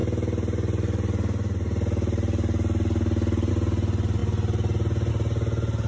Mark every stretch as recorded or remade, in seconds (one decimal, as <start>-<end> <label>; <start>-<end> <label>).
0.0-5.9 recorded